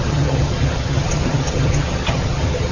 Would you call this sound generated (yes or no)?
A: yes